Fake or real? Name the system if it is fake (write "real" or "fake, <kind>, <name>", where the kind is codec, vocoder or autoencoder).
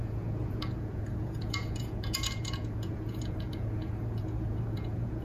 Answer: fake, vocoder, Vocos